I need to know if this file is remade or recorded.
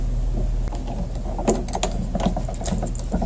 recorded